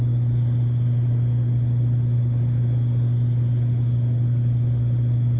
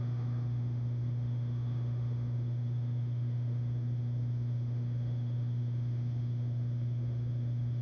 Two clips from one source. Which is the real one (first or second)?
first